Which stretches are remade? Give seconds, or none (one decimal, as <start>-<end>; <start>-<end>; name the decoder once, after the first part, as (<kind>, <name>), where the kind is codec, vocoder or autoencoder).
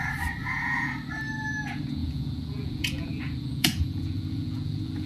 0.4-0.9 (vocoder, Vocos); 2.0-5.1